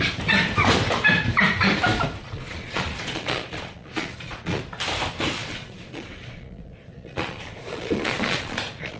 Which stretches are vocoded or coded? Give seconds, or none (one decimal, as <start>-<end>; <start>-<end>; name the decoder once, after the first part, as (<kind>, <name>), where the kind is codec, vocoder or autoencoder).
2.2-4.6 (vocoder, Vocos); 5.4-9.0